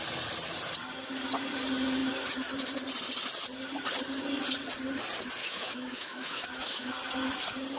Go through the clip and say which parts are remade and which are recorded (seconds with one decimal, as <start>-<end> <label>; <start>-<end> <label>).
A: 0.0-5.4 recorded; 5.4-6.9 remade; 6.9-7.8 recorded